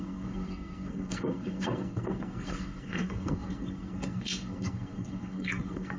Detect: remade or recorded remade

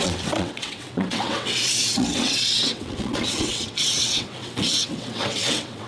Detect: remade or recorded remade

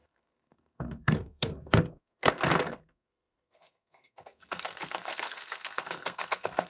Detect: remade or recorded remade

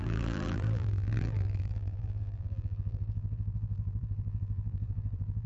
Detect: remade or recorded remade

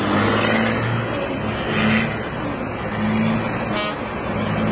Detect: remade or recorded recorded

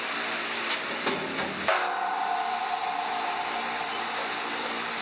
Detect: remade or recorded recorded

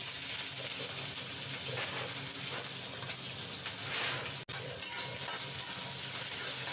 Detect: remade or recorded recorded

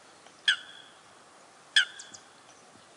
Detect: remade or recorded recorded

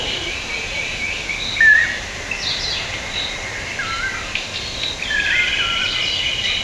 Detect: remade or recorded recorded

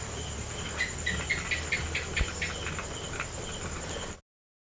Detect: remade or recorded recorded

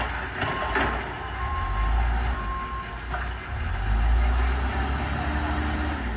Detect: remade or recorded recorded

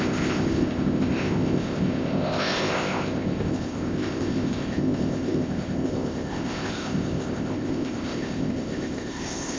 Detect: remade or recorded remade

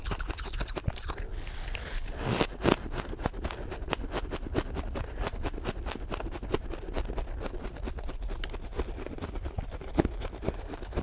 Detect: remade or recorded recorded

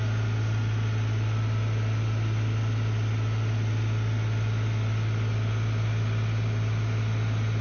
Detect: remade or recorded recorded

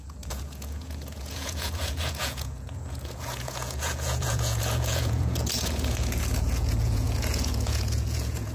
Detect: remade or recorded remade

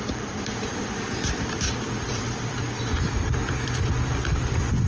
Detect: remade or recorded remade